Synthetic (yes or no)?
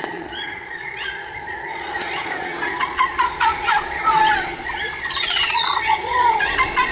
yes